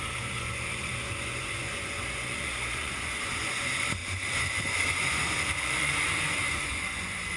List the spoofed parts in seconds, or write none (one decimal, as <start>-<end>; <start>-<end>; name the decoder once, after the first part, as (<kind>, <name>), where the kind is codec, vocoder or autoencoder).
0.0-7.4 (vocoder, Vocos)